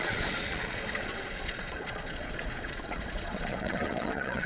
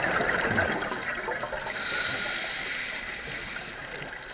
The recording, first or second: second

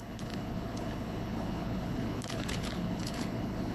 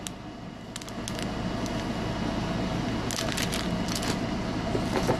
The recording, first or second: second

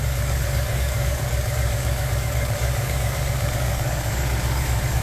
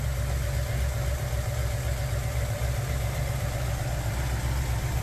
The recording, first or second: second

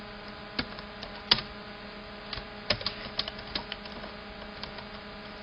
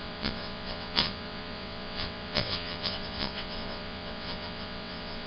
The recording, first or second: first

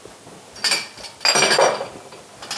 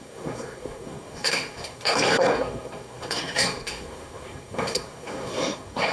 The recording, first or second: first